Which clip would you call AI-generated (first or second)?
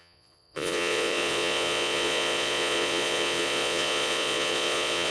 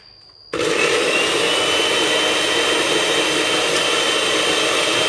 first